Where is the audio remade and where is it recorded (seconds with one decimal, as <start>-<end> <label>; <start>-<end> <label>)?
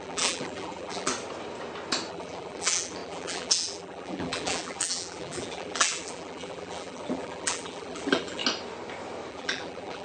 0.0-1.1 remade; 1.1-2.1 recorded; 2.1-8.4 remade; 8.4-9.3 recorded; 9.3-10.0 remade